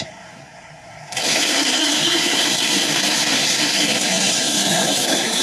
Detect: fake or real fake